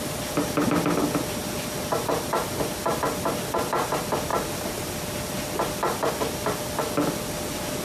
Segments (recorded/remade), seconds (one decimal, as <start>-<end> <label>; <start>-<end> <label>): 0.0-7.8 recorded